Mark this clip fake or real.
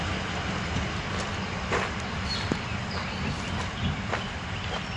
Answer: real